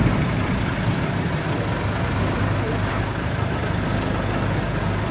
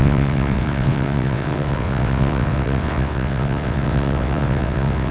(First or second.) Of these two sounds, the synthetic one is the second